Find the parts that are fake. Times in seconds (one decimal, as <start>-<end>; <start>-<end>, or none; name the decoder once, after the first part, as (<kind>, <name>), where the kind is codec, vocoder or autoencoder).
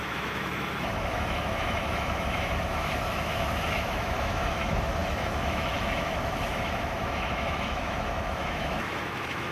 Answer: 0.0-9.5 (autoencoder, DAC-VAE)